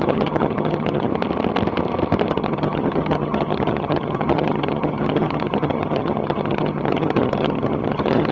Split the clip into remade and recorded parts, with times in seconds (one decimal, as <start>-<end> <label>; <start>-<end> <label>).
0.0-1.1 remade; 1.1-2.3 recorded; 2.3-8.3 remade